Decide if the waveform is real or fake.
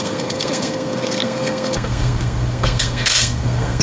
fake